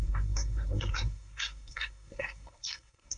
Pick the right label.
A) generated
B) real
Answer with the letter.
A